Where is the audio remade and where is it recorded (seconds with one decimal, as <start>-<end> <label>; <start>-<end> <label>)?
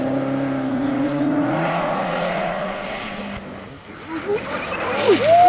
0.0-0.7 recorded; 0.7-3.2 remade; 3.2-5.5 recorded